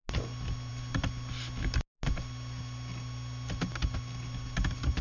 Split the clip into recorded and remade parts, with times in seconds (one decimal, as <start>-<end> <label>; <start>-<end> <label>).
0.0-5.0 recorded